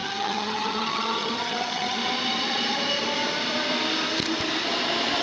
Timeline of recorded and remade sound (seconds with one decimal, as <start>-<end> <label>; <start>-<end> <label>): 0.0-2.0 remade; 2.0-5.2 recorded